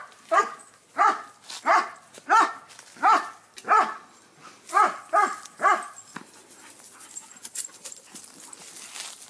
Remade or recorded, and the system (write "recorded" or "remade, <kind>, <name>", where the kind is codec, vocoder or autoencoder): recorded